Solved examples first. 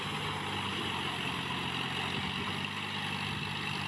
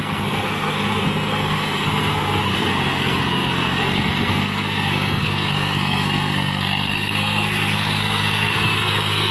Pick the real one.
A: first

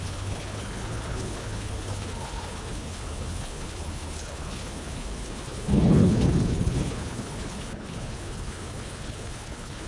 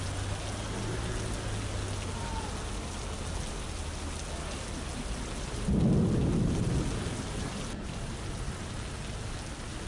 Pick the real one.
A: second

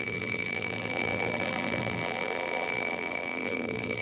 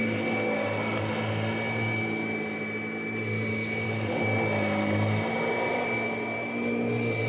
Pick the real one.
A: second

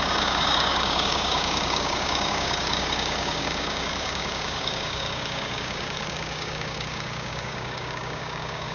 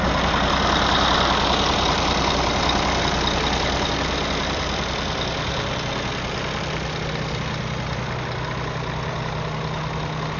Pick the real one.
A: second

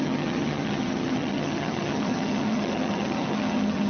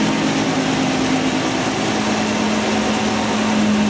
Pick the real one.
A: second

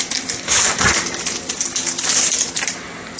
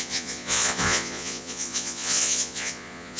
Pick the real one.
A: first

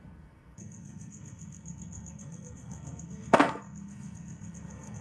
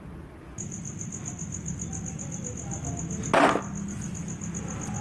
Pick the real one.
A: second